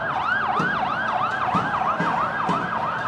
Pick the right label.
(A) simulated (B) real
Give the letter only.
A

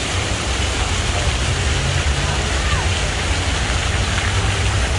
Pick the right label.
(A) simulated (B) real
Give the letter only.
B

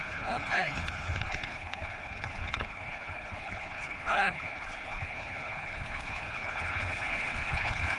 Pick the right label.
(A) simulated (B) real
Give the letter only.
A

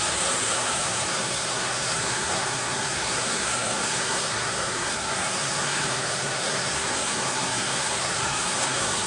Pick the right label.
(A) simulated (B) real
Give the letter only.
A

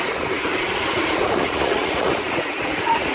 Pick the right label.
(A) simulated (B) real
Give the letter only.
A